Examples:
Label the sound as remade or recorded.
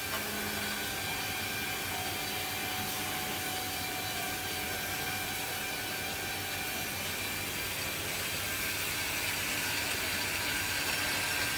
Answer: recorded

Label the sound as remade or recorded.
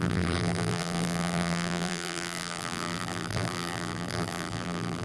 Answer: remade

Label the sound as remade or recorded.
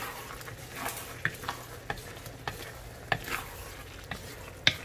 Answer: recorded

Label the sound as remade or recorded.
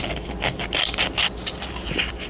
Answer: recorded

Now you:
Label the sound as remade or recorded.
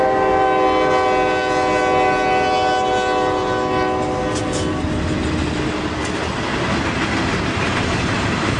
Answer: recorded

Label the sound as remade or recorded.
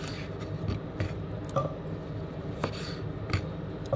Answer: recorded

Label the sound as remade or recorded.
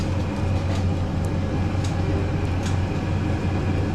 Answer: recorded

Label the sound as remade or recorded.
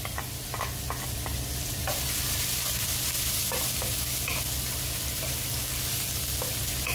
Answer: recorded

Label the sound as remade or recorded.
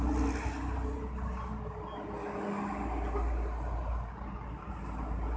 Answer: recorded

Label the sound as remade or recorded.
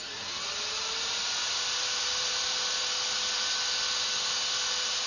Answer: recorded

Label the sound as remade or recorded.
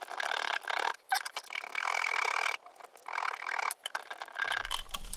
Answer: recorded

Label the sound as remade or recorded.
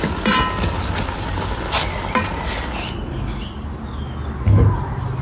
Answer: recorded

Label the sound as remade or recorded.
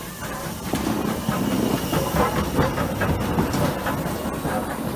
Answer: recorded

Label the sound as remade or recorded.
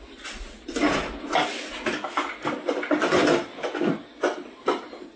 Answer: recorded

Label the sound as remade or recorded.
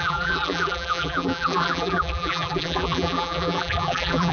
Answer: remade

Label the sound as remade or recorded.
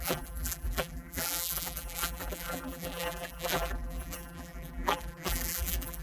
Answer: remade